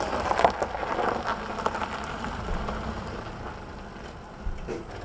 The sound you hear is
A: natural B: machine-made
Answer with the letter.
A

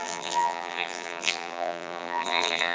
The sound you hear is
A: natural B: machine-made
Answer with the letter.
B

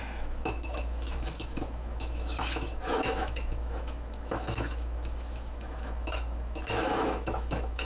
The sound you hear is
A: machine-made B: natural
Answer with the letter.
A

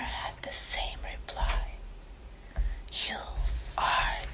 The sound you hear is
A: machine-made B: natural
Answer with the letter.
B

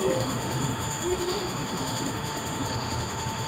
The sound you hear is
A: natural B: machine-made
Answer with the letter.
B